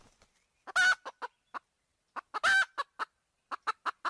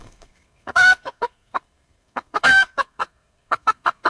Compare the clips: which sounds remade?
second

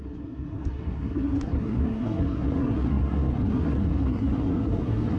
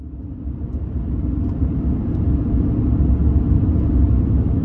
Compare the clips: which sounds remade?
first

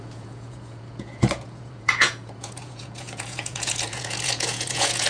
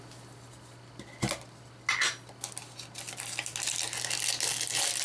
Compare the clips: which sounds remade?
first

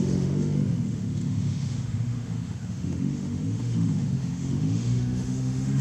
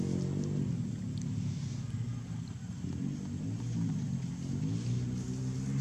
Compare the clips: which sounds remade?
first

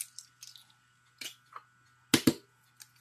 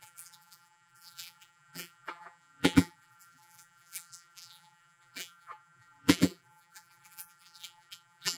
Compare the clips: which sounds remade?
second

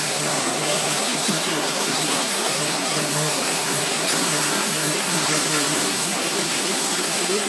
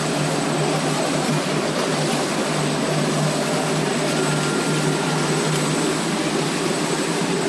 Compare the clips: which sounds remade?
first